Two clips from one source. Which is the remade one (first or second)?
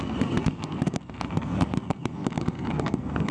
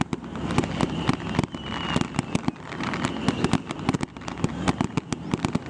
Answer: first